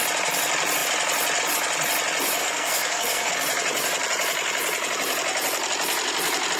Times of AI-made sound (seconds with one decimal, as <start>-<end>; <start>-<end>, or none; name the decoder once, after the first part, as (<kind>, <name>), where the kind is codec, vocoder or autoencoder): 2.4-3.3 (codec, SNAC)